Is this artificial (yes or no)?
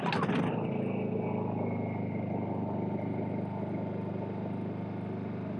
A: no